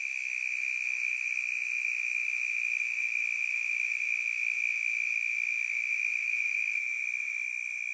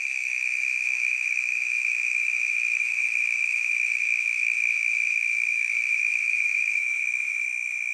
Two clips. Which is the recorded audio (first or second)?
first